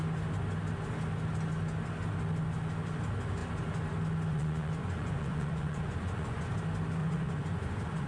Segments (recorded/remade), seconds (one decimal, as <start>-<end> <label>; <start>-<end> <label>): 0.0-4.3 recorded; 4.3-6.5 remade; 6.5-7.0 recorded; 7.0-8.1 remade